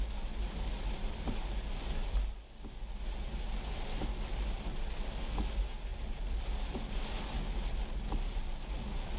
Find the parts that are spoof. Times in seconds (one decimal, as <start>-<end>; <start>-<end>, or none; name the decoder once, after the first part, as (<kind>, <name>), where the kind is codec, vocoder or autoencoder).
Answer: 5.9-6.7 (vocoder, BigVGAN v2)